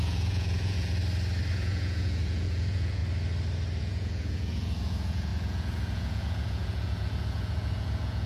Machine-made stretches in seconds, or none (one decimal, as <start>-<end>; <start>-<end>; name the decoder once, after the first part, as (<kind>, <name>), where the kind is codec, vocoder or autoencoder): 0.0-1.0 (vocoder, Vocos); 1.5-3.0; 3.8-8.3

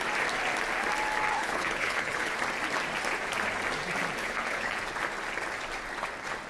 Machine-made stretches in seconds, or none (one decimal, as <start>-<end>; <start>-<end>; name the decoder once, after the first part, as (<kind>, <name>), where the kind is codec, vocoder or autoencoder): 1.3-2.3 (codec, HILCodec); 4.2-4.8

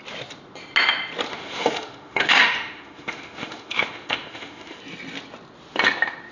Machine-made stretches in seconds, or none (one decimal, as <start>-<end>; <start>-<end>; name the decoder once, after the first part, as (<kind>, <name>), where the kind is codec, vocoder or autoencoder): 1.3-4.8 (autoencoder, DAC-VAE)

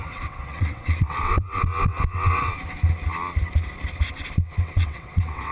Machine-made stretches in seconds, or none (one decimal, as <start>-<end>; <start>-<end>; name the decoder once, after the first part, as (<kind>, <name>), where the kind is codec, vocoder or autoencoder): 0.0-2.5 (vocoder, WaveNeXt); 4.4-5.5

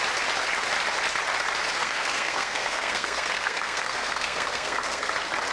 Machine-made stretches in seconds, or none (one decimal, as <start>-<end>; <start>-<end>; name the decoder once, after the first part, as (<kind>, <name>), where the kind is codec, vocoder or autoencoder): 1.8-5.1 (codec, SNAC)